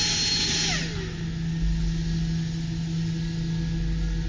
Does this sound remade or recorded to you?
recorded